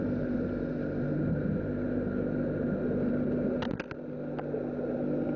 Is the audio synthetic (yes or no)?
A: no